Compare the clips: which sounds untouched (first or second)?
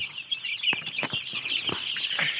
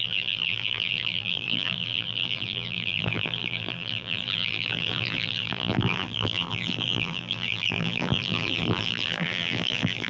first